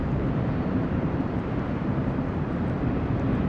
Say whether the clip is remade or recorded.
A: remade